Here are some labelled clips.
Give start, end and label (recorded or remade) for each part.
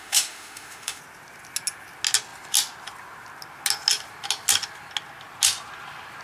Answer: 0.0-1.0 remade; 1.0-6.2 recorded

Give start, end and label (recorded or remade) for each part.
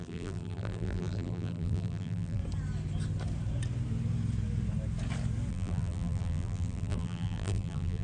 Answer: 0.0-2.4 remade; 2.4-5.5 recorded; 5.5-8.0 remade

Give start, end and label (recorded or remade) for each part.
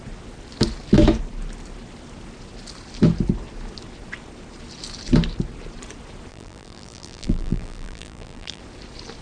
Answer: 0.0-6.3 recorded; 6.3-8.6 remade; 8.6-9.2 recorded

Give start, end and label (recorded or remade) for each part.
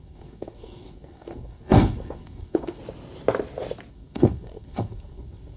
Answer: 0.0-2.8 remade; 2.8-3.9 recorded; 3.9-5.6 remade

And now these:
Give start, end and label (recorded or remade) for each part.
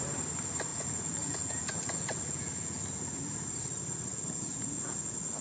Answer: 0.0-0.7 recorded; 0.7-2.8 remade; 2.8-4.1 recorded; 4.1-5.4 remade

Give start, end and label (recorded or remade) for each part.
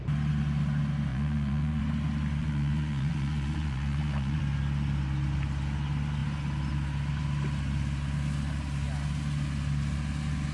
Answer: 0.0-1.1 recorded; 1.1-1.8 remade; 1.8-2.4 recorded; 2.4-4.4 remade; 4.4-10.5 recorded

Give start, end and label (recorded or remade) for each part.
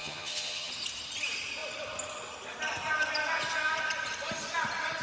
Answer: 0.0-0.7 remade; 0.7-5.0 recorded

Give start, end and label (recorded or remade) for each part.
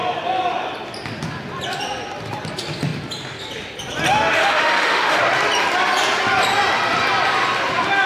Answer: 0.0-4.1 recorded; 4.1-5.2 remade; 5.2-8.1 recorded